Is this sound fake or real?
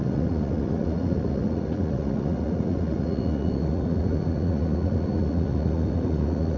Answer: fake